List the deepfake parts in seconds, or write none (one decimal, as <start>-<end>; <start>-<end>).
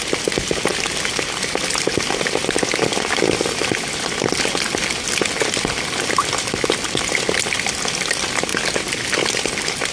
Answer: none